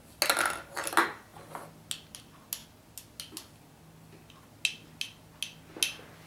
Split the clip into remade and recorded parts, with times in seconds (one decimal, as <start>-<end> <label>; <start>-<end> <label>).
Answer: 0.0-6.3 recorded